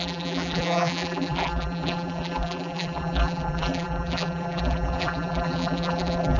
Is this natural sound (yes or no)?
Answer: no